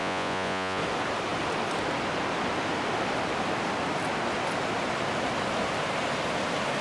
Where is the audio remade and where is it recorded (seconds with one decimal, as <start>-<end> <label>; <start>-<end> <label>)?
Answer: 0.0-0.8 remade; 0.8-6.8 recorded